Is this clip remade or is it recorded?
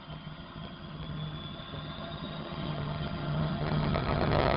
remade